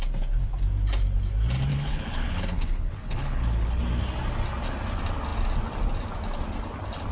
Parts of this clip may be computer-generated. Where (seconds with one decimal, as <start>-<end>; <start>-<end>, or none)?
1.7-3.8